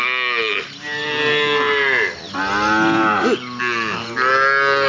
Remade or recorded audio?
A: recorded